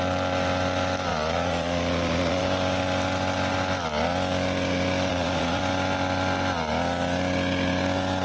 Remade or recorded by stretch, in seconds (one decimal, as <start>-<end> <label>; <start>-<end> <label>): 0.0-1.1 recorded; 1.1-2.4 remade; 2.4-5.1 recorded; 5.1-5.6 remade; 5.6-8.2 recorded